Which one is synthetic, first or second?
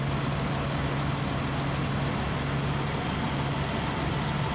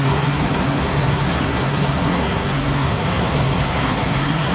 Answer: second